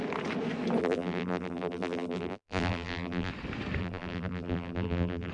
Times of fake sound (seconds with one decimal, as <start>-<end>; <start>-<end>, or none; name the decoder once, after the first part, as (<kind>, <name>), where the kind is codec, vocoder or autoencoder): 0.8-3.3 (vocoder, BigVGAN v2); 3.8-5.3